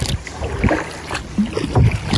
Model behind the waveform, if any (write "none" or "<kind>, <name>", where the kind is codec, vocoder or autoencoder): none